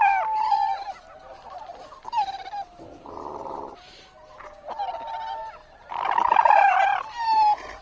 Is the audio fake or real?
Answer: real